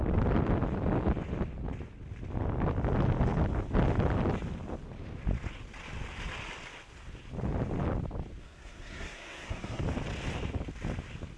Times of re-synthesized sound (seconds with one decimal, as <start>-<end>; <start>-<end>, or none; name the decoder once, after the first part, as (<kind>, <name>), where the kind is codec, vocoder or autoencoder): 8.4-9.8 (codec, SNAC)